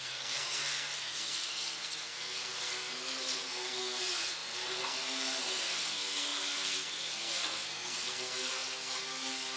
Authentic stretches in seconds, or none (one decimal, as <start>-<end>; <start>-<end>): none

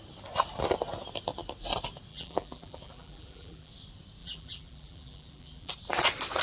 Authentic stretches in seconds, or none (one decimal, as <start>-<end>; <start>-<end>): 0.0-2.1; 3.7-4.2; 5.7-6.4

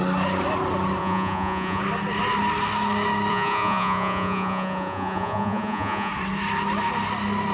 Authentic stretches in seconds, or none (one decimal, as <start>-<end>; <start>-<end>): 0.0-1.0; 1.8-3.3; 6.1-7.5

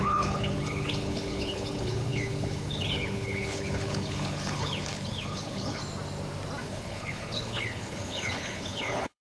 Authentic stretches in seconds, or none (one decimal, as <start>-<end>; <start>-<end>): 5.8-6.6

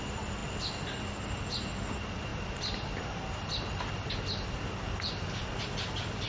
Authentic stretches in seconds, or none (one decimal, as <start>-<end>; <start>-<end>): 0.0-6.3